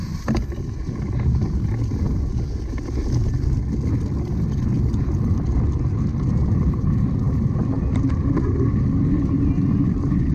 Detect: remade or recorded recorded